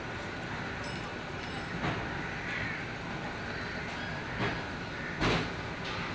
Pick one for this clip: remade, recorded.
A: recorded